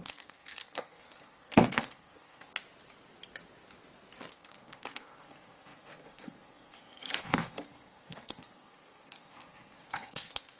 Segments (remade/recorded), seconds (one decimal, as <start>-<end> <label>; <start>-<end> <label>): 0.0-2.5 remade; 2.5-4.3 recorded; 4.3-10.6 remade